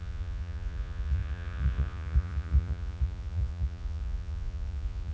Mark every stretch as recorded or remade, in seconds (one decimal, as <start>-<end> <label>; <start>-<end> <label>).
0.0-5.1 remade